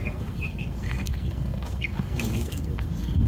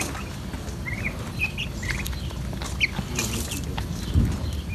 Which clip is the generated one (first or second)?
first